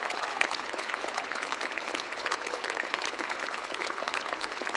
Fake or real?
fake